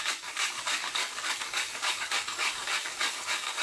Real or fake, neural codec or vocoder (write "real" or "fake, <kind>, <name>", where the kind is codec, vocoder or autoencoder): fake, codec, DAC